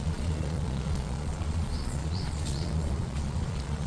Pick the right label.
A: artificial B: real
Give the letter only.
A